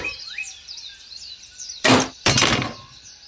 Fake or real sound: fake